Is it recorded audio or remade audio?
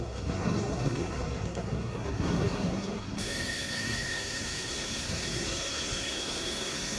remade